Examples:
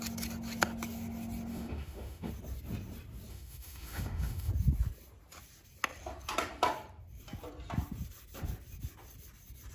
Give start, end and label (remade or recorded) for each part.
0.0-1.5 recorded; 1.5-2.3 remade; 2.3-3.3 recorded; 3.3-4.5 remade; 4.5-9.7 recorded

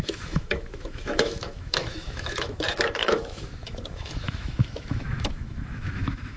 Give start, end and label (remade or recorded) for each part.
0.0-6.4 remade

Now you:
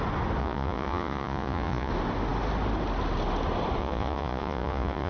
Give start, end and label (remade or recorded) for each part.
0.0-0.4 recorded; 0.4-1.9 remade; 1.9-3.8 recorded; 3.8-5.1 remade